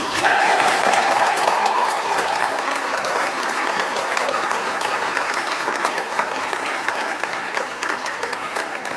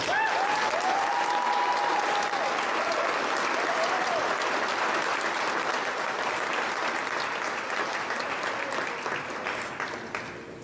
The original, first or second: second